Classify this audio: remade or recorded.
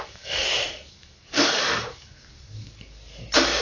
remade